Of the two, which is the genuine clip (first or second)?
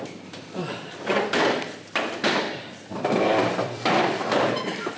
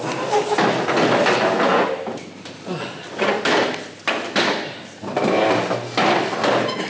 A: second